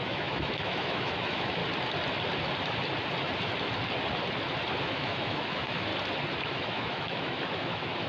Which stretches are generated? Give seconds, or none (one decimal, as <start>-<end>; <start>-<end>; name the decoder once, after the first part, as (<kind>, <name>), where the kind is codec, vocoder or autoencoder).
0.0-1.6 (autoencoder, DAC-VAE); 4.8-5.9; 6.4-8.1